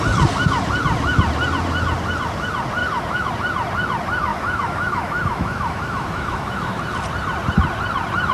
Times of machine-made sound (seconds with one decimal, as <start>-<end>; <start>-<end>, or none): 2.8-3.3; 4.3-6.7